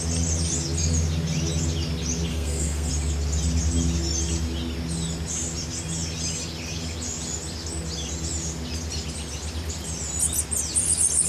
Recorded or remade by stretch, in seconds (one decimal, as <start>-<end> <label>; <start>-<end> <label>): 0.0-2.3 recorded; 2.3-2.9 remade; 2.9-11.3 recorded